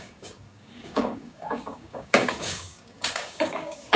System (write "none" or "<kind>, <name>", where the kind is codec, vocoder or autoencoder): codec, DAC